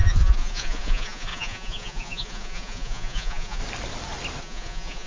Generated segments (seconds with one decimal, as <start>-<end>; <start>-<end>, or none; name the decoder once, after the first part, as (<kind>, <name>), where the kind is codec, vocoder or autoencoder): 0.0-3.6 (vocoder, Vocos); 4.4-5.1